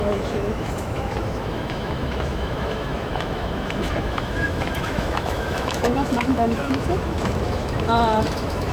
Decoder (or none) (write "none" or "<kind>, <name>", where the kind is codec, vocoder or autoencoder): autoencoder, DAC-VAE